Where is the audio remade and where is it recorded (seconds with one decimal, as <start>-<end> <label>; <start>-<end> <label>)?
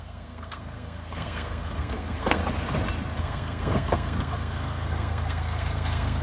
0.0-2.4 remade; 2.4-3.2 recorded; 3.2-6.2 remade